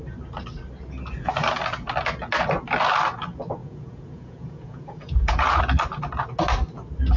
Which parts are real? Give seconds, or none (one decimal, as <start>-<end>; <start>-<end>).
0.0-3.6; 5.6-7.2